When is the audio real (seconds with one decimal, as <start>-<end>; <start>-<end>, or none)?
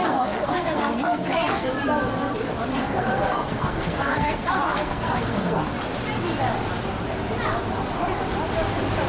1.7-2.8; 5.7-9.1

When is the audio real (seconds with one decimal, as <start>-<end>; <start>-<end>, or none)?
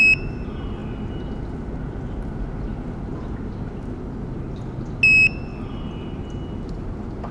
0.0-7.3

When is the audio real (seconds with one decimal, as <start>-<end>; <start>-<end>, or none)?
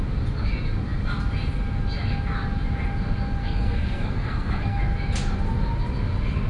0.0-3.4; 4.8-6.5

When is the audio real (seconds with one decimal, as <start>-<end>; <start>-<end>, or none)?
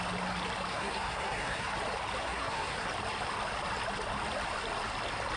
0.0-0.7; 1.7-2.2; 2.9-5.4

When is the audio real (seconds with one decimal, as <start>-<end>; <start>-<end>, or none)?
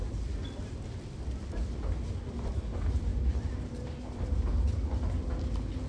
0.0-5.9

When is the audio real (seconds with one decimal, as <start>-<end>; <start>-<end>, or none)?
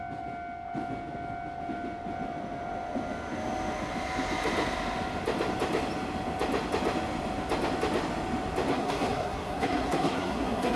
0.0-8.7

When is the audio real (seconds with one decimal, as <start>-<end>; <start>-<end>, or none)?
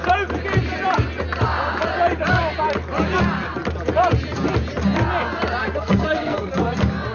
0.0-5.6; 6.5-7.1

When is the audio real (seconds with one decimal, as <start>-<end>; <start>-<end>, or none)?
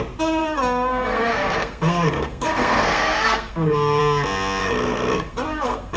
0.0-0.4; 4.0-4.6